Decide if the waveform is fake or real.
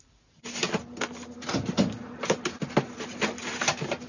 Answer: real